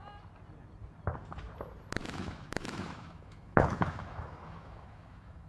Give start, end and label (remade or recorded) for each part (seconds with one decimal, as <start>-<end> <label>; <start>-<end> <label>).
0.0-2.0 recorded; 2.0-5.5 remade